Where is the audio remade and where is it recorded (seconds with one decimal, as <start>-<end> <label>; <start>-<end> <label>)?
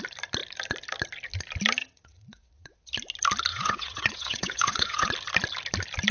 0.0-1.8 recorded; 1.8-2.9 remade; 2.9-3.5 recorded; 3.5-5.1 remade; 5.1-6.1 recorded